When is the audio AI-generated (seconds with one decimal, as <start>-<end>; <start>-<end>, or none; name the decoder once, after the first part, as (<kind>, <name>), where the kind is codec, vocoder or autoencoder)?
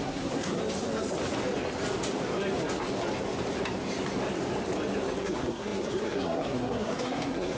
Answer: 0.0-0.6 (codec, SNAC); 5.2-7.6